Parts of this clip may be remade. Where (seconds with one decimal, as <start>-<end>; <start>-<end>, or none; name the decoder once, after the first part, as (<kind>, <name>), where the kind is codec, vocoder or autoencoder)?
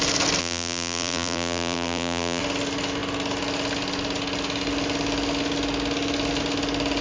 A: 0.4-2.4 (vocoder, BigVGAN v2)